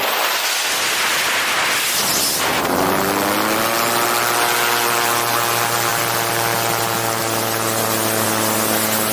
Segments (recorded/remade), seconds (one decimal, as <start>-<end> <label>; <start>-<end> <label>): 0.0-9.1 recorded